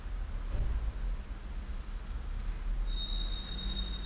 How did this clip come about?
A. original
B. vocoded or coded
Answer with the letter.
A